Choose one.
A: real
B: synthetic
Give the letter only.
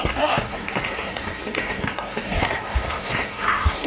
B